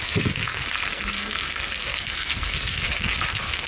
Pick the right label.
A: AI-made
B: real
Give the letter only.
A